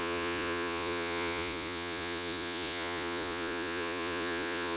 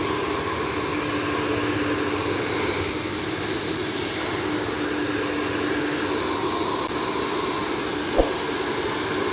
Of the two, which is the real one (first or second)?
second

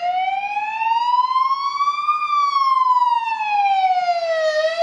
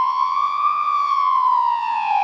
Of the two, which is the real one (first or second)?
first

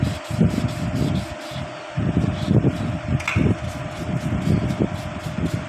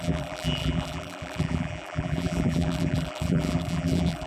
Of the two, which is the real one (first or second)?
first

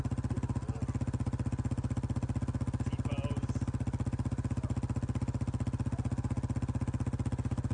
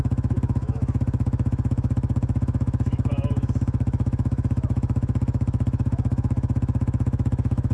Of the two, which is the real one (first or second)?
first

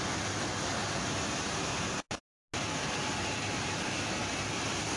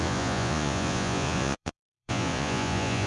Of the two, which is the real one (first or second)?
first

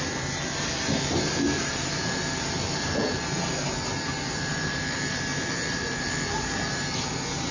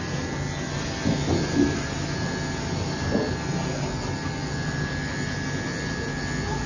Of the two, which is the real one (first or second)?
second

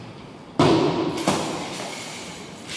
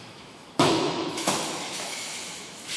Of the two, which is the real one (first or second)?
first